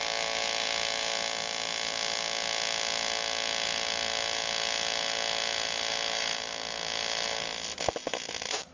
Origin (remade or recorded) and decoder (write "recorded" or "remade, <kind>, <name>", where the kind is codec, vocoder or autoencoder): recorded